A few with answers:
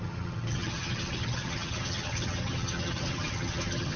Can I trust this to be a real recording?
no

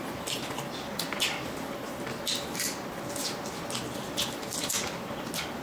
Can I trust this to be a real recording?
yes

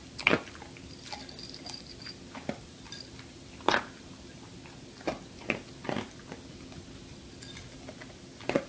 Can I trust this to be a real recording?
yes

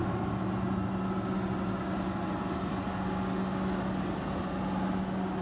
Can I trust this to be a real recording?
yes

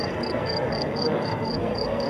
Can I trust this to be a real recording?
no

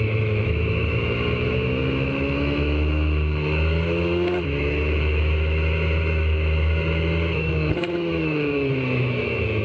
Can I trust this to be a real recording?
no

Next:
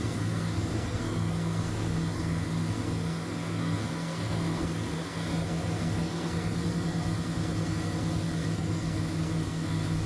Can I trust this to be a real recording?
no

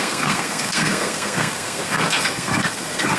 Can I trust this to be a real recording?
no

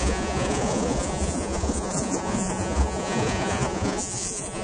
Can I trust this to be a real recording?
no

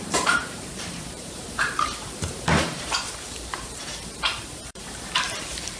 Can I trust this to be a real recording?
no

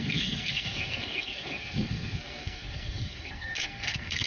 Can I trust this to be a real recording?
no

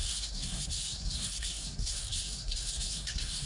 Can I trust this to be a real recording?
no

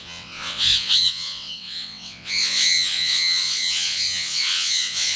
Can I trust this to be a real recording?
no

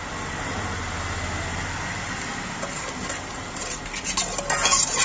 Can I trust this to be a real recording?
yes